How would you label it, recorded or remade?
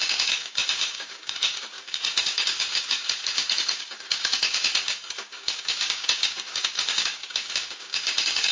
remade